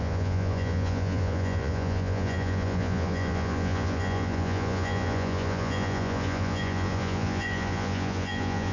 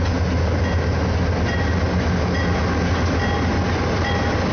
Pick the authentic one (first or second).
second